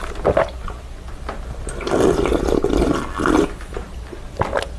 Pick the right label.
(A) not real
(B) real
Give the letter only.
B